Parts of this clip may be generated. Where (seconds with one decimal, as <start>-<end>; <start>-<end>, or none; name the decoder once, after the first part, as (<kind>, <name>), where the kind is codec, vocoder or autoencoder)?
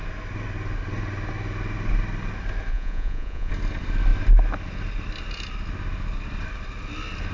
2.7-3.5 (vocoder, Vocos)